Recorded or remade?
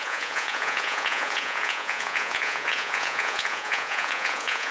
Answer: remade